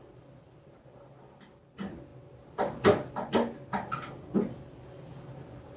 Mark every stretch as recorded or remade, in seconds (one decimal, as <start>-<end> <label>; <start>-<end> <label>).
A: 0.0-5.8 recorded